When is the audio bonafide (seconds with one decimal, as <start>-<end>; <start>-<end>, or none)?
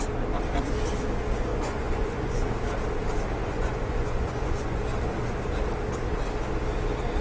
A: 0.0-1.5; 2.5-3.4; 4.8-7.2